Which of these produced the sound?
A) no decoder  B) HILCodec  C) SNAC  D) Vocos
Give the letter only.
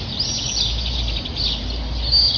A